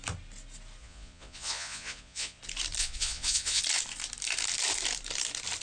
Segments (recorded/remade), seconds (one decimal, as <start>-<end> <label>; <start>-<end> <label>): 0.0-0.8 recorded; 0.8-2.4 remade; 2.4-2.8 recorded; 2.8-3.6 remade; 3.6-5.6 recorded

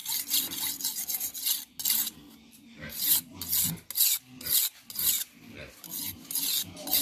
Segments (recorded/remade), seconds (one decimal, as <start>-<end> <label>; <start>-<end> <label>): 0.0-7.0 recorded

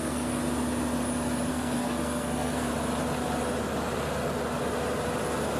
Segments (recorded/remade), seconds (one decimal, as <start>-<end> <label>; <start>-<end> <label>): 0.0-0.4 remade; 0.4-1.5 recorded; 1.5-2.7 remade; 2.7-5.6 recorded

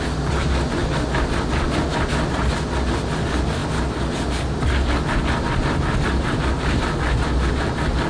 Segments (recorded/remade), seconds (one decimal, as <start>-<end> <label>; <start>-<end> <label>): 0.0-8.1 recorded

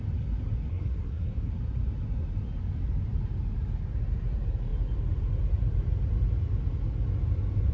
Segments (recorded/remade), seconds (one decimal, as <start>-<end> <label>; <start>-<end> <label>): 0.0-0.7 recorded; 0.7-1.5 remade; 1.5-7.7 recorded

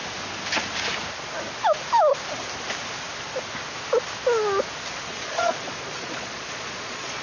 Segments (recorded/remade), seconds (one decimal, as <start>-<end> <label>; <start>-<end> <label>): 0.0-5.1 recorded; 5.1-7.2 remade

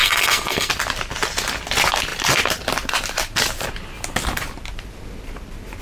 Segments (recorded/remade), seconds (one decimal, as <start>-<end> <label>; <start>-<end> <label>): 0.0-0.7 remade; 0.7-5.8 recorded

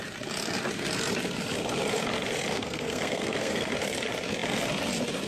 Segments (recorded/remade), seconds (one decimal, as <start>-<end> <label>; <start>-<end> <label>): 0.0-2.5 recorded; 2.5-3.7 remade; 3.7-5.3 recorded